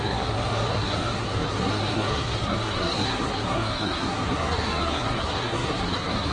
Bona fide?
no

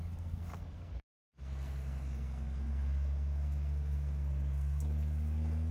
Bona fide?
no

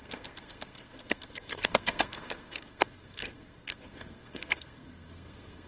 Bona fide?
no